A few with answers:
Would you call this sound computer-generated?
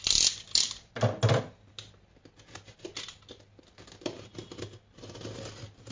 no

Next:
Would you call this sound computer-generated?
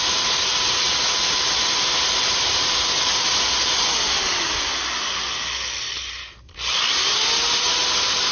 no